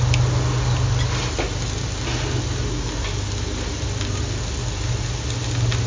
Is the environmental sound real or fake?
real